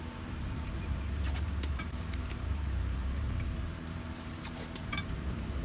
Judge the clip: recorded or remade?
remade